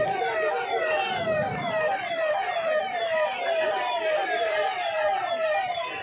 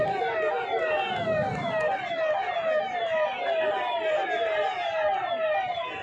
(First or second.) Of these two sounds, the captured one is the second